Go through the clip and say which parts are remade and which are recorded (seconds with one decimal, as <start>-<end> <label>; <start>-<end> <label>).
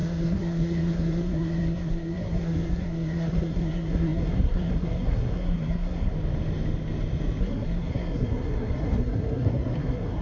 0.0-6.1 remade; 6.1-7.4 recorded; 7.4-10.2 remade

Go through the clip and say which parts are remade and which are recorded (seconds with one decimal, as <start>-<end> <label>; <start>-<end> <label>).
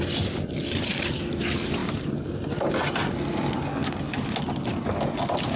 0.0-5.6 recorded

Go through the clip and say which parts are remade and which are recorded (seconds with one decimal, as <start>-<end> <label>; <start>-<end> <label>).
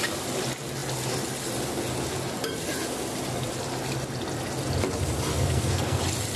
0.0-5.3 recorded; 5.3-6.0 remade; 6.0-6.4 recorded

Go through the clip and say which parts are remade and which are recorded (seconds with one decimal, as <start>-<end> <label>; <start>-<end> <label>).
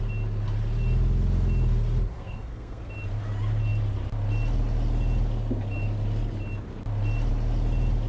0.0-2.1 recorded; 2.1-2.8 remade; 2.8-8.1 recorded